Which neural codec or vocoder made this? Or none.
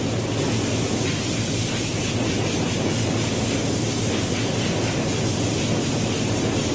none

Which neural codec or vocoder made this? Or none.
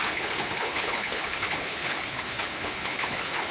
codec, HILCodec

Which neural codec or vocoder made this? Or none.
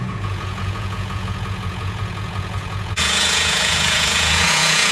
vocoder, Vocos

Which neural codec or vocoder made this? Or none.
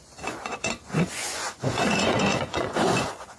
vocoder, Vocos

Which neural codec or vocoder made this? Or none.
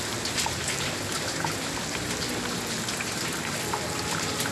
none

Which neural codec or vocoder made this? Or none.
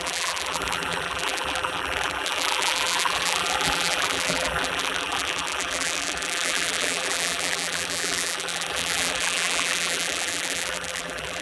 vocoder, BigVGAN v2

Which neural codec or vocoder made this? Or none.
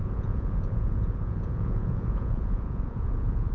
vocoder, Vocos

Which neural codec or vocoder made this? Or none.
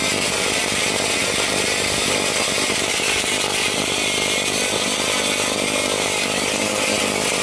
none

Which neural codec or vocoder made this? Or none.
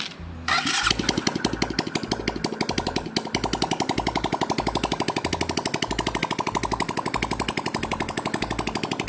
none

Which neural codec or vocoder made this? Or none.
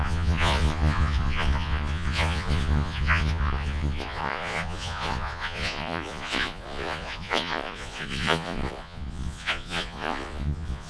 vocoder, Vocos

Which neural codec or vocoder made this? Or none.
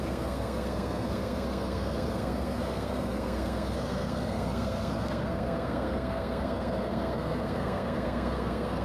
codec, SNAC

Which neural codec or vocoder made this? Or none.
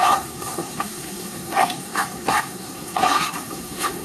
codec, SNAC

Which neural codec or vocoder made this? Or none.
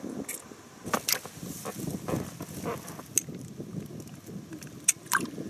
none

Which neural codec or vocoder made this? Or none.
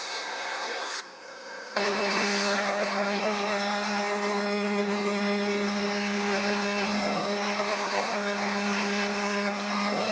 codec, SNAC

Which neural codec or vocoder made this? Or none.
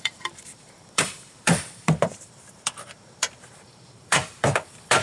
vocoder, BigVGAN v2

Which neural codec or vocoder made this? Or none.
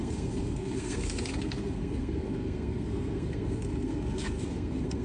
codec, SNAC